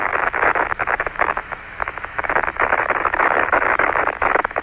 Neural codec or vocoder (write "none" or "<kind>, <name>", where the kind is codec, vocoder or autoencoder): autoencoder, DAC-VAE